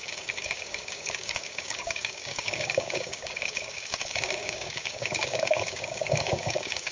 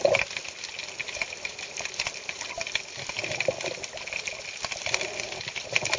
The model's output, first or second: first